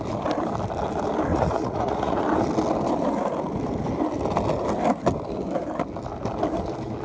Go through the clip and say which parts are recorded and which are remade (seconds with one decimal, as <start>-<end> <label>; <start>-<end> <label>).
0.0-1.3 recorded; 1.3-2.2 remade; 2.2-7.0 recorded

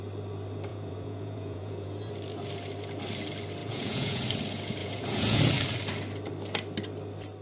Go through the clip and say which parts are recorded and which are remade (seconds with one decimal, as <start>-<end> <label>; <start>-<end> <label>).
0.0-0.7 recorded; 0.7-2.1 remade; 2.1-3.6 recorded; 3.6-4.2 remade; 4.2-4.8 recorded; 4.8-5.4 remade; 5.4-7.4 recorded

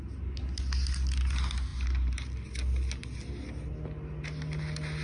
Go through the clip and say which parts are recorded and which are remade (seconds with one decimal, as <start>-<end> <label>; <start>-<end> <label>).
0.0-5.0 recorded

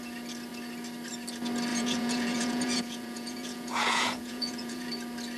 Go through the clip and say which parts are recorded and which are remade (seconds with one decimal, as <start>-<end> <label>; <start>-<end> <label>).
0.0-1.7 recorded; 1.7-4.9 remade; 4.9-5.4 recorded

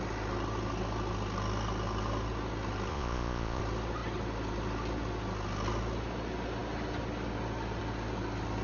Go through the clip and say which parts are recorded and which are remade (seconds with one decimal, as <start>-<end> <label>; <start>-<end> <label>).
0.0-2.9 recorded; 2.9-3.6 remade; 3.6-8.6 recorded

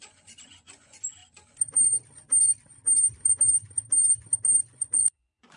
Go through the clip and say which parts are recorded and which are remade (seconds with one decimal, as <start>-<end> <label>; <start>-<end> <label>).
0.0-1.2 remade; 1.2-4.6 recorded; 4.6-5.6 remade

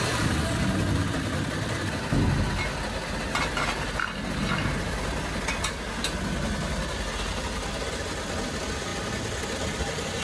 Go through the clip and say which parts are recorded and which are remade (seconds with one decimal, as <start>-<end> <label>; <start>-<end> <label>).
0.0-10.2 recorded